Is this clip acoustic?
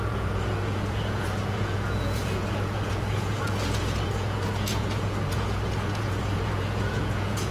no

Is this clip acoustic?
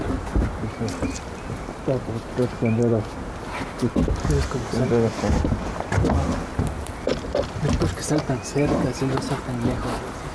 yes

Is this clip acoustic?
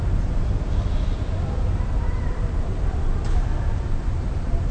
no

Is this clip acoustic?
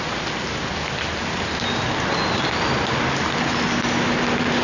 yes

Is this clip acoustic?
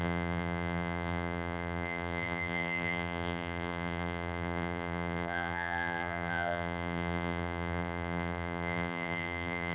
no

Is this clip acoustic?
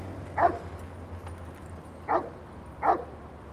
yes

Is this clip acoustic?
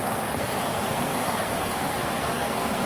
no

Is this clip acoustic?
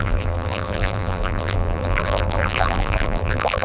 no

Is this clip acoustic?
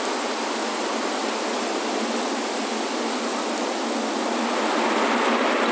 yes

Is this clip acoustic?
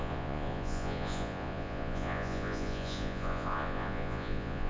no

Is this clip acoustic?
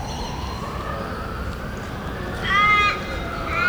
yes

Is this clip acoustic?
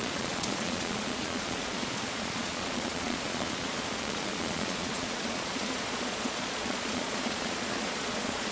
no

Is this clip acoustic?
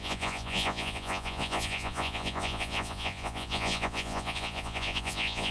no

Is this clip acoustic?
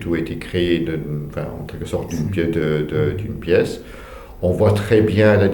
yes